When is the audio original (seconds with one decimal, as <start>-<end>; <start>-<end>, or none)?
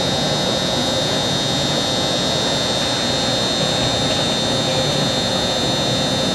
0.0-6.3